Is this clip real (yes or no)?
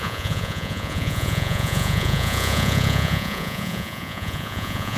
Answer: no